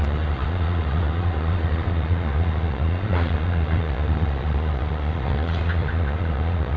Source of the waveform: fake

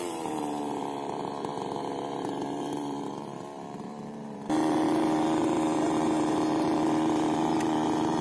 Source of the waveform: fake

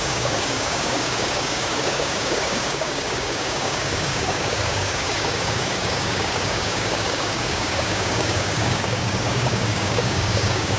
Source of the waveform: fake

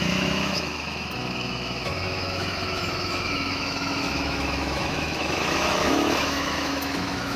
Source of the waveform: fake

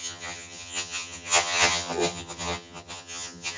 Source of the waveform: fake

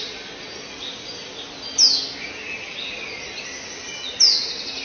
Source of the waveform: real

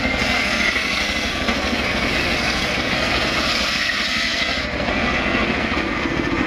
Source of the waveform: fake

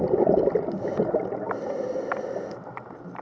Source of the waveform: real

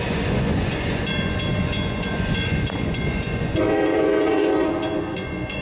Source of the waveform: fake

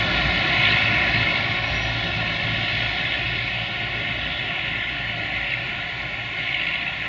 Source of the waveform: real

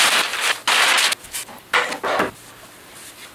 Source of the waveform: real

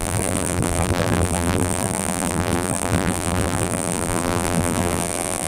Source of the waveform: fake